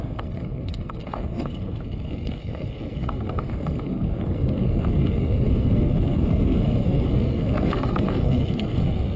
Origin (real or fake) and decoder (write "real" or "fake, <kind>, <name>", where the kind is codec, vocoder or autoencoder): fake, codec, SNAC